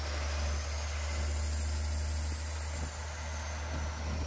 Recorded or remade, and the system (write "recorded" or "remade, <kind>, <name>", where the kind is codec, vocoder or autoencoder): recorded